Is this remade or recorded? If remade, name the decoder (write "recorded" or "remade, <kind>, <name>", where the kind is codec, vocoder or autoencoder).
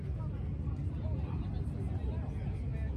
recorded